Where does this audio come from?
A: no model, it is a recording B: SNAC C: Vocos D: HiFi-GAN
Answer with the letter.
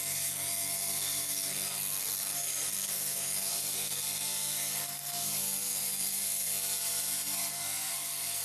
B